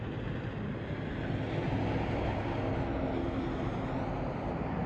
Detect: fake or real real